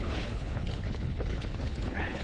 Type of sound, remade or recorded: remade